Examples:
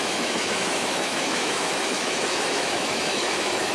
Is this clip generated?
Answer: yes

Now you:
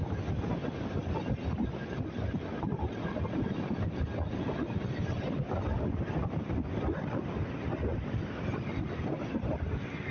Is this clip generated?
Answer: no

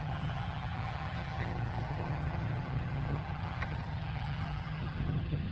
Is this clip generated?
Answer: yes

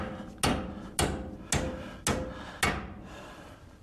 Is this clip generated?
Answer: no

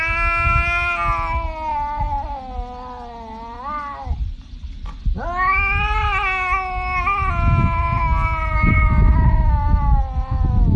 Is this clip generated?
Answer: no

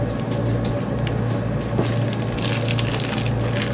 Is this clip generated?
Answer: no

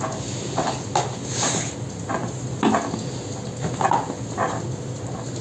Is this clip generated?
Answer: no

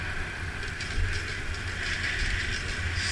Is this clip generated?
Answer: no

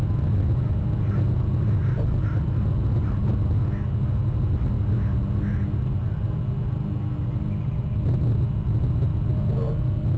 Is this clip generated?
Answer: no